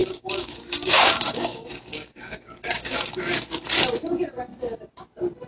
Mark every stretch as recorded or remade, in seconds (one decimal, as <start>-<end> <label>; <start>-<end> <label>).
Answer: 0.0-3.3 remade; 3.3-5.5 recorded